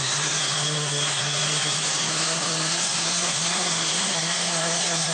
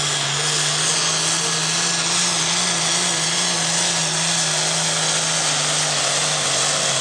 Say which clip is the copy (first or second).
first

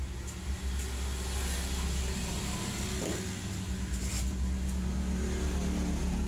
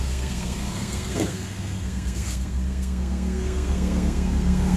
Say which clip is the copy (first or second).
second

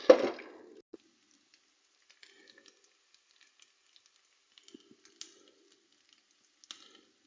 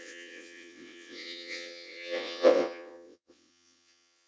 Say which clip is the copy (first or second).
second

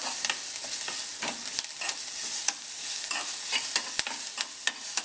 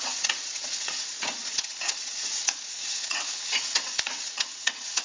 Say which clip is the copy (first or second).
second